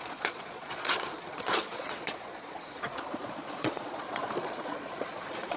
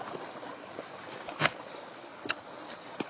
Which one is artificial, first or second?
first